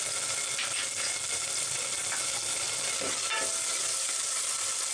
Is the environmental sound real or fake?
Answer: real